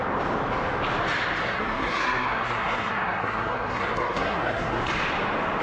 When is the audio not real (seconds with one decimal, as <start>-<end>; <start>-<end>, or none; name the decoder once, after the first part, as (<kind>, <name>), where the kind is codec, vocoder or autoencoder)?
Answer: 1.4-4.8 (codec, SNAC)